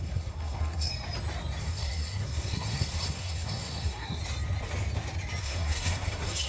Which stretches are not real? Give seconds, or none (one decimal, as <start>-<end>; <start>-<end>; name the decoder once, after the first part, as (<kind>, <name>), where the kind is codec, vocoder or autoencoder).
0.0-0.9 (codec, SNAC); 1.6-4.2; 5.4-6.5